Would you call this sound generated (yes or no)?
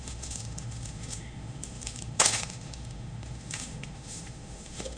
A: yes